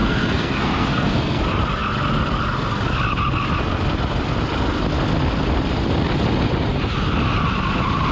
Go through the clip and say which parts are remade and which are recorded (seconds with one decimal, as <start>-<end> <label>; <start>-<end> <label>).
0.0-1.4 remade; 1.4-8.1 recorded